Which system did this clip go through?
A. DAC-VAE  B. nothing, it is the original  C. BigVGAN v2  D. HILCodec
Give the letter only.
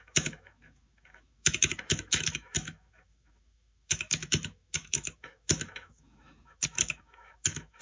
A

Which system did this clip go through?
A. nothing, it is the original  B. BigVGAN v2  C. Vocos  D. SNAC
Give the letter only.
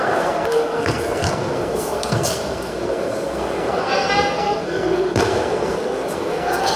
D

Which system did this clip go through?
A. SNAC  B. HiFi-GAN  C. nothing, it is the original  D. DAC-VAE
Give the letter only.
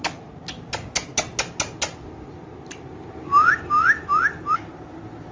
C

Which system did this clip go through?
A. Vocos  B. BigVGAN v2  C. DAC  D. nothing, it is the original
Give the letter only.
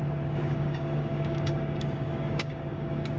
C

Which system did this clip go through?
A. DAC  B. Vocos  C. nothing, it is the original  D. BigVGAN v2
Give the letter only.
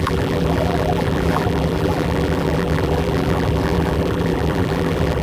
D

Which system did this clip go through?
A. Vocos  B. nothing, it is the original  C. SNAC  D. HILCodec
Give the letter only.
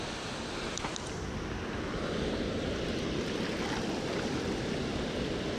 B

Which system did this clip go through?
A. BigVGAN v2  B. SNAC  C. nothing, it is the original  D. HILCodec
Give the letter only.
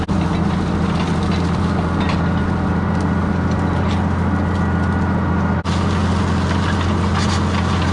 C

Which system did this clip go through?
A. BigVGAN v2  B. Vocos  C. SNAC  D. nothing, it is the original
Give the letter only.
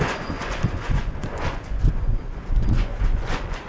B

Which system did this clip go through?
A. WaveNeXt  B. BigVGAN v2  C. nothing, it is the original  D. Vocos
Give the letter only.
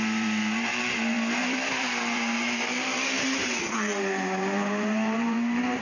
B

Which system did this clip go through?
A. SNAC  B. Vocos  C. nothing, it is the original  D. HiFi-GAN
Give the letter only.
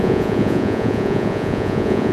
B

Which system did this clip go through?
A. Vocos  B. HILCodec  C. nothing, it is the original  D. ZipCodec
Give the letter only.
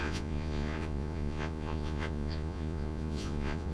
A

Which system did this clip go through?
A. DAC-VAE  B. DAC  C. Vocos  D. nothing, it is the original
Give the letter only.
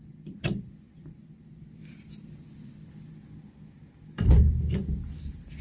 D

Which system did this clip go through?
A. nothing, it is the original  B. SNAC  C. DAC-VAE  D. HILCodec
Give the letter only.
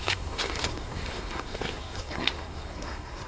B